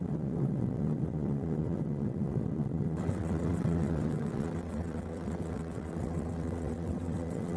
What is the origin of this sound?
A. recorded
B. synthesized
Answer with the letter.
B